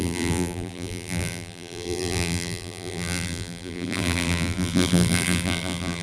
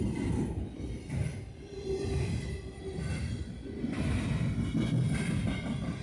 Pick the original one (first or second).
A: second